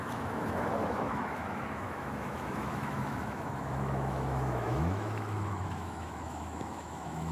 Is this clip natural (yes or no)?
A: no